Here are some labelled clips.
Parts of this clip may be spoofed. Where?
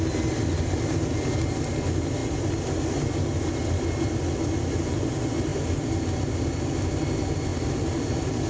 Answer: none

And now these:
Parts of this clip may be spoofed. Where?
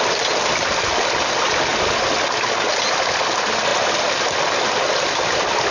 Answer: none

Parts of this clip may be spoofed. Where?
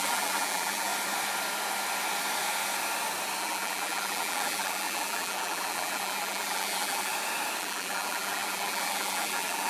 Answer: 0.0-0.9 (vocoder, BigVGAN v2); 3.4-7.1; 7.6-9.7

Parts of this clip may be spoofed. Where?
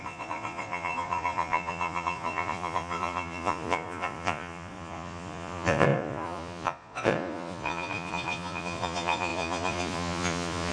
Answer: 0.0-10.7 (vocoder, Vocos)